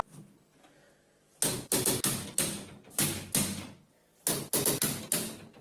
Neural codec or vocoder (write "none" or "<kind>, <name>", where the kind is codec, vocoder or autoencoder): none